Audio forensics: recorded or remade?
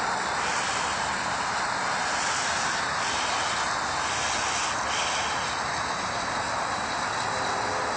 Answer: recorded